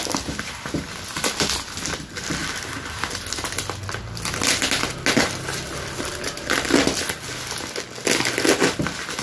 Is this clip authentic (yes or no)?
yes